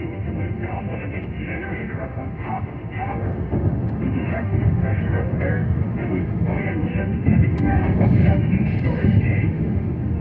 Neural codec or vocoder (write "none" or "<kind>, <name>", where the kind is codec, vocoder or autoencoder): autoencoder, DAC-VAE